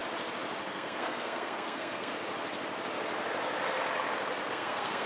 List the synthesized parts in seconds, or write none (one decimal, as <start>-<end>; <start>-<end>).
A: 0.6-2.1; 4.5-5.1